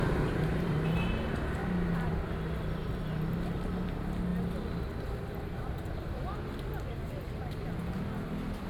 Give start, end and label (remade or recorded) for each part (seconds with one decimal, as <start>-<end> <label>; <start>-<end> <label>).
0.0-8.7 recorded